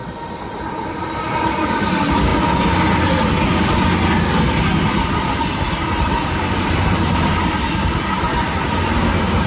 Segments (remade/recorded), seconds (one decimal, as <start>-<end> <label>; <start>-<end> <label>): 0.0-9.5 recorded